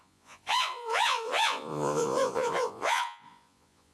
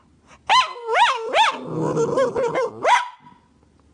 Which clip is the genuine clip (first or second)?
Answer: second